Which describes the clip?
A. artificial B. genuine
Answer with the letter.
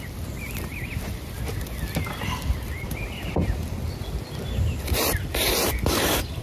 A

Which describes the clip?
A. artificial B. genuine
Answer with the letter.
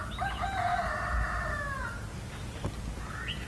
B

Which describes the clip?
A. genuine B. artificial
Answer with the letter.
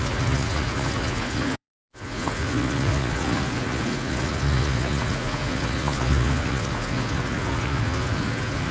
B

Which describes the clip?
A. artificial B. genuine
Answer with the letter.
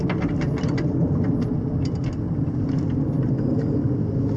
B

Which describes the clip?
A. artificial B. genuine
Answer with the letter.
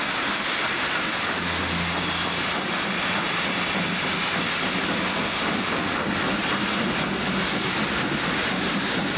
B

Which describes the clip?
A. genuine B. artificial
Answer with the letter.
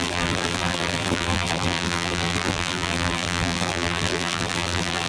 B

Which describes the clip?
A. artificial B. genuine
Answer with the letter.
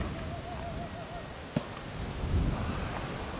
B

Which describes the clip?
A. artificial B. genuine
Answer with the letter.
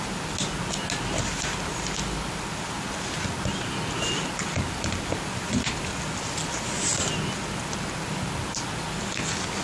B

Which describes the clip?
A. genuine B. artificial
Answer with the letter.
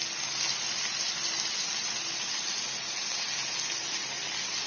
A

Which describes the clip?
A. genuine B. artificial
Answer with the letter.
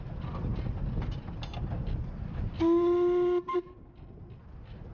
A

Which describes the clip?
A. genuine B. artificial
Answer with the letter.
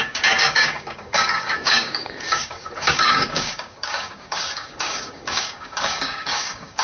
B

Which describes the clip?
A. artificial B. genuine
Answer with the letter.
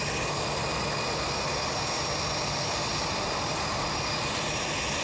B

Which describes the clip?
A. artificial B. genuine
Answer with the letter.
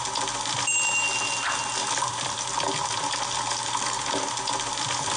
B